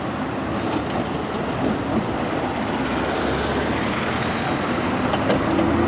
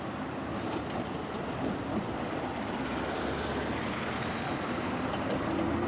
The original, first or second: first